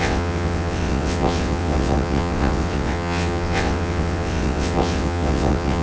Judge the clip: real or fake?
fake